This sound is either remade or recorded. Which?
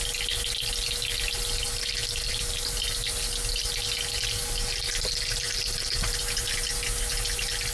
recorded